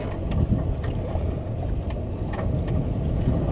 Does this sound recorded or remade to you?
recorded